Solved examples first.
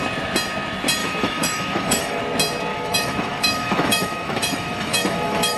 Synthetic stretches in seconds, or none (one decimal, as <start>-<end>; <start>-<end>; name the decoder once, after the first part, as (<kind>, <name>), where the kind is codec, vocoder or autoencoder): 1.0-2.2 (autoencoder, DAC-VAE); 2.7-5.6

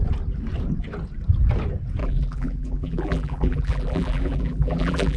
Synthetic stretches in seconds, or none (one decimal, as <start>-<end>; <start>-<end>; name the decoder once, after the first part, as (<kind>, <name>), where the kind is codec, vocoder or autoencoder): 2.0-5.2 (vocoder, BigVGAN v2)

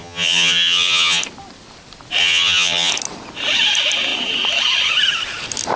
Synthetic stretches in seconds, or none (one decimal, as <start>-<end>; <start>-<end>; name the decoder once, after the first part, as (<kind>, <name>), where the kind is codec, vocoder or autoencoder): 0.0-1.2 (vocoder, HiFi-GAN); 2.2-2.9